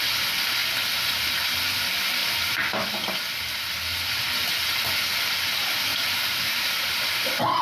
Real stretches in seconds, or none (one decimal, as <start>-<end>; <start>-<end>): 0.0-5.9; 6.6-7.6